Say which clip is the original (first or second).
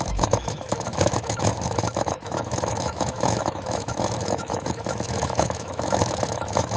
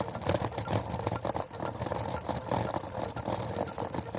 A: second